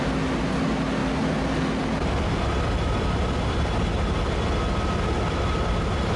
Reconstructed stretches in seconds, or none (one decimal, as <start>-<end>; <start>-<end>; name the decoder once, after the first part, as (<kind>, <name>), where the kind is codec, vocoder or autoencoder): none